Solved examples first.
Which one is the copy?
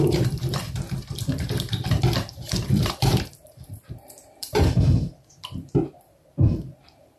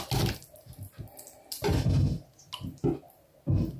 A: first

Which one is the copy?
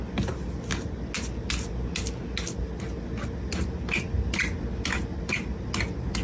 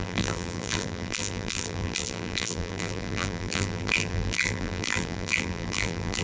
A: second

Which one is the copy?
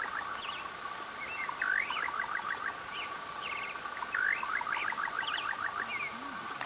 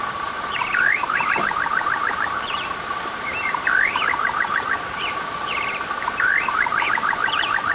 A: second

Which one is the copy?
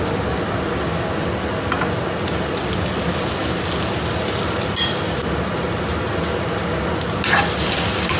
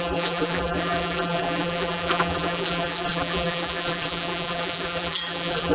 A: second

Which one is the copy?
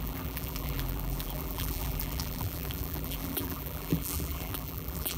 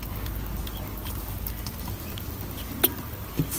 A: first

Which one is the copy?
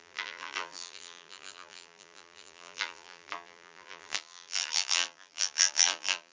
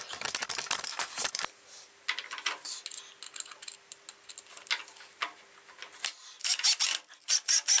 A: first